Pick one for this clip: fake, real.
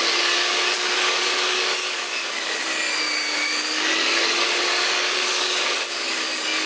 fake